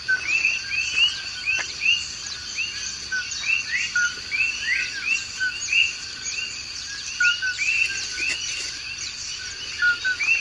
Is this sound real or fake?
real